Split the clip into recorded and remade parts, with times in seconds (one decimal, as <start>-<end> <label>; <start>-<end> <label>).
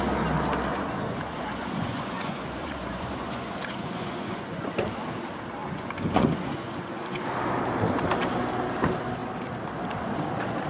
0.0-0.7 recorded; 0.7-4.7 remade; 4.7-5.6 recorded; 5.6-7.2 remade; 7.2-10.7 recorded